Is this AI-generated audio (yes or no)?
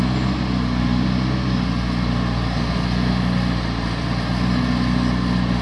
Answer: no